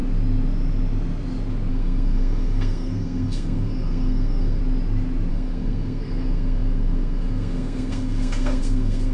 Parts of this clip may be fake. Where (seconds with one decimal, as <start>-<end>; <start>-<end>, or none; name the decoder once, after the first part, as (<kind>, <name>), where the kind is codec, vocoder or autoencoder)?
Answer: 1.7-4.6 (codec, SNAC); 5.3-9.1